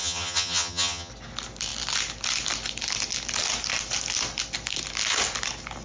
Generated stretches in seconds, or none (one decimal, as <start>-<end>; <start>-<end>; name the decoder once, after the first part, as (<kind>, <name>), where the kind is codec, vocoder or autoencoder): 0.0-1.1 (vocoder, HiFi-GAN)